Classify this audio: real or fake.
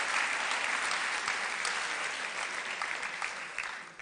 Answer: real